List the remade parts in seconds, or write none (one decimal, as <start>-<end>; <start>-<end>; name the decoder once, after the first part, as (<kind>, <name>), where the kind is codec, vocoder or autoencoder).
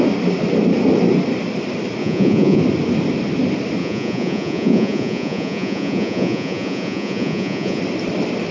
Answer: 2.0-2.6 (vocoder, Vocos); 3.8-7.8